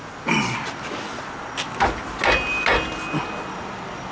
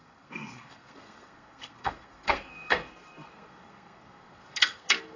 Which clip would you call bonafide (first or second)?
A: first